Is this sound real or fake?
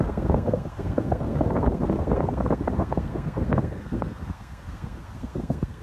fake